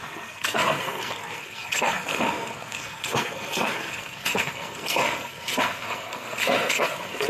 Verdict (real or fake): fake